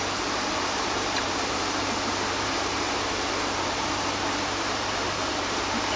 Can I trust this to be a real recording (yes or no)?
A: no